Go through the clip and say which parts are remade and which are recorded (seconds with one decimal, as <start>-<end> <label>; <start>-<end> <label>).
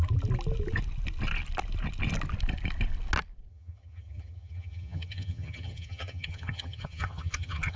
0.0-3.5 recorded; 3.5-7.8 remade